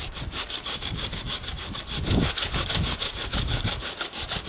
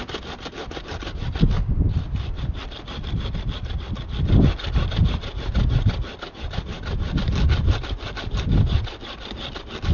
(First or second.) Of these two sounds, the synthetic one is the first